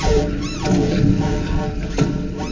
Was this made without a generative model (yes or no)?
yes